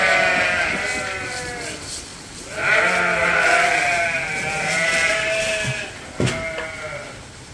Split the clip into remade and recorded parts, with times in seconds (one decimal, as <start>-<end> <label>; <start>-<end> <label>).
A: 0.0-2.1 recorded; 2.1-5.4 remade; 5.4-7.5 recorded